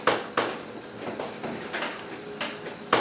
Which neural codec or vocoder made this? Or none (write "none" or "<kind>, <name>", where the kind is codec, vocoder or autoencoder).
none